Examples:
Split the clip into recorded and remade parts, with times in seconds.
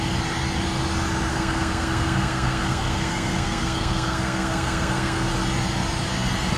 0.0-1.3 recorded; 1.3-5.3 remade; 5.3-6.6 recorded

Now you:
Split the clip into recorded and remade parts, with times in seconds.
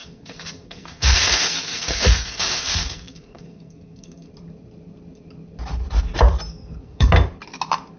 0.0-4.3 remade; 4.3-6.5 recorded; 6.5-7.1 remade; 7.1-8.0 recorded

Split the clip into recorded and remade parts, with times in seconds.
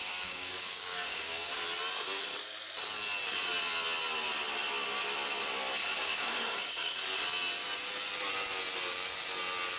0.0-1.5 remade; 1.5-6.0 recorded; 6.0-6.9 remade; 6.9-9.8 recorded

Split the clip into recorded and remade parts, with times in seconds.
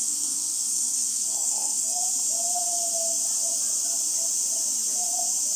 0.0-2.0 remade; 2.0-5.6 recorded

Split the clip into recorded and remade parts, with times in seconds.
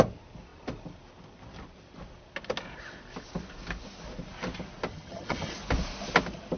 0.0-4.9 recorded; 4.9-5.5 remade; 5.5-6.6 recorded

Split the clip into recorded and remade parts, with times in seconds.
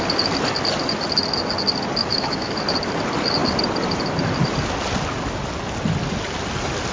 0.0-2.0 recorded; 2.0-2.6 remade; 2.6-6.9 recorded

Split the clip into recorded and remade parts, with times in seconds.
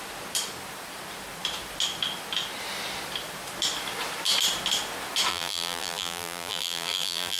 0.0-5.3 recorded; 5.3-7.4 remade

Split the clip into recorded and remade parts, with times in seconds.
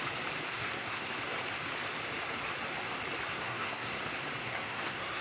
0.0-0.5 recorded; 0.5-1.1 remade; 1.1-3.3 recorded; 3.3-4.0 remade; 4.0-4.4 recorded; 4.4-5.2 remade